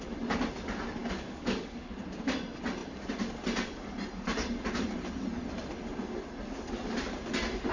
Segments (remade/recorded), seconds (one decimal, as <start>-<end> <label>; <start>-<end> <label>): 0.0-1.0 recorded; 1.0-1.9 remade; 1.9-7.7 recorded